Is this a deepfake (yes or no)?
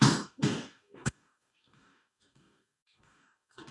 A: yes